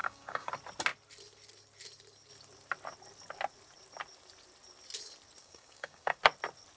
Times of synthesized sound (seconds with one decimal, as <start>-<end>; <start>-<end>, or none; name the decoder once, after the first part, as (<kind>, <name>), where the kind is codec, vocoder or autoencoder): 0.0-0.5 (codec, DAC); 5.4-6.2